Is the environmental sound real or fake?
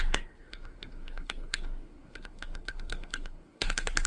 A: fake